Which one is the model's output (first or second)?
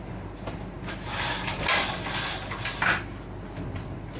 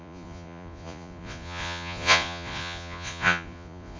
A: second